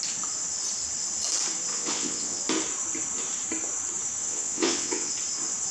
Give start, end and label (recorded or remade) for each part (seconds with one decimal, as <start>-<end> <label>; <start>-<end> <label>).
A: 0.0-1.7 recorded; 1.7-2.4 remade; 2.4-4.2 recorded; 4.2-5.1 remade; 5.1-5.7 recorded